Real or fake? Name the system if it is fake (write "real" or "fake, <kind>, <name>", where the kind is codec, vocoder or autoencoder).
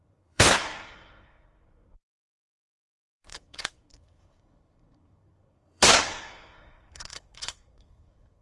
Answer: fake, codec, SNAC